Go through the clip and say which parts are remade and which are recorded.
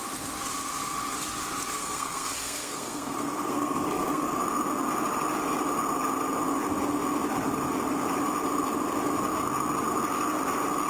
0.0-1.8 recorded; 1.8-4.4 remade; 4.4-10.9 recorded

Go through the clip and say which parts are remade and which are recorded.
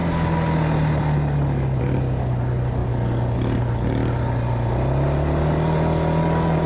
0.0-6.7 recorded